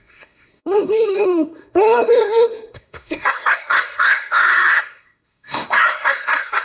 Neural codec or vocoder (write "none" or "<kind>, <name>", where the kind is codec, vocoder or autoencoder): codec, SNAC